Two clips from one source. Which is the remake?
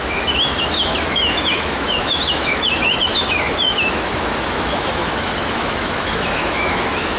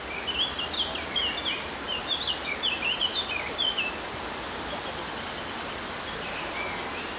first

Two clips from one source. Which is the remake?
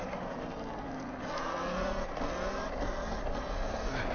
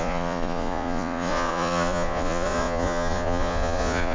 second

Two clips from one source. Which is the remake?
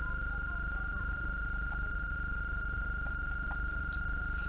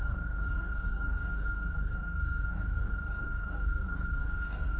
second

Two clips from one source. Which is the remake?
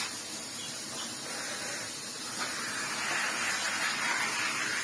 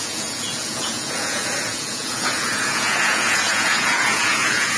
second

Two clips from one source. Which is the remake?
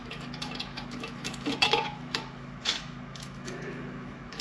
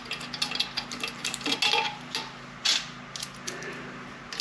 first